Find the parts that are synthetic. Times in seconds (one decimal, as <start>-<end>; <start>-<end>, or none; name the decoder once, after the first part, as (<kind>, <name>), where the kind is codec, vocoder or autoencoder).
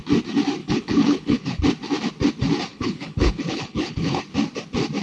0.6-1.6 (codec, HILCodec); 2.7-4.2